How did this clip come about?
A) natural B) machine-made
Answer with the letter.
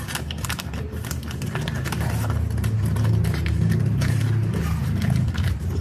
A